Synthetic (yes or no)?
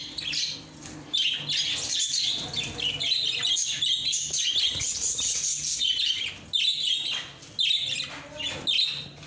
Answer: no